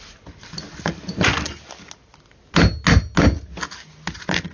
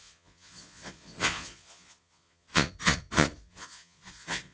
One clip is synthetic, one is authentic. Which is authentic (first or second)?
first